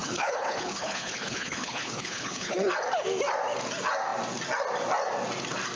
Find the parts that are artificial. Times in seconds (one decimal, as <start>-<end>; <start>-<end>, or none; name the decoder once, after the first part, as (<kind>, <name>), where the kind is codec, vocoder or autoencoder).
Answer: 0.0-2.7 (codec, HILCodec)